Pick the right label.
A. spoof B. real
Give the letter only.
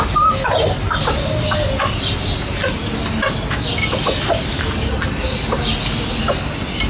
B